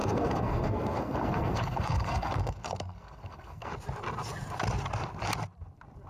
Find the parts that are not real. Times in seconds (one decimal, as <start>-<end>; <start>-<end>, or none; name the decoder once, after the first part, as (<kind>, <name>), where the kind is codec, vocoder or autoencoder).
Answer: 0.0-3.7 (codec, SNAC)